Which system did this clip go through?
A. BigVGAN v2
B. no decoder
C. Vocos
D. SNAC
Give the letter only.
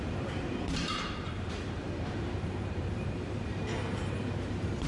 A